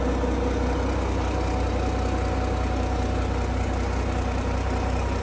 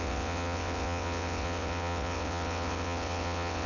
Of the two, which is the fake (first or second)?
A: second